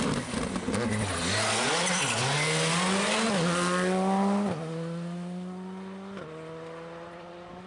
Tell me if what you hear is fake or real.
real